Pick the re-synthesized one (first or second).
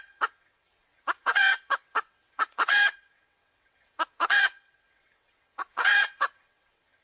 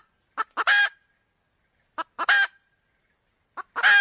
first